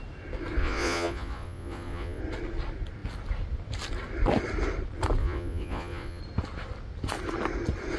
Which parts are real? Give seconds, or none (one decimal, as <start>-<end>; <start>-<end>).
0.0-0.6; 2.2-5.2; 6.2-8.0